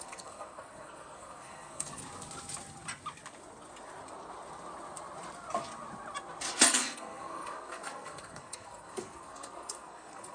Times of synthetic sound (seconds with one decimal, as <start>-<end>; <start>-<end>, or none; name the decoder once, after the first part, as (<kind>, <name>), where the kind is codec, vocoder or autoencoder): 0.0-2.0 (codec, SNAC); 6.6-10.3